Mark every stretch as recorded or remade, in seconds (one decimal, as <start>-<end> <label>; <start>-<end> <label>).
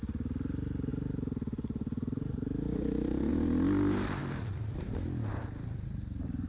0.0-0.9 recorded; 0.9-3.3 remade; 3.3-4.2 recorded; 4.2-4.8 remade; 4.8-6.5 recorded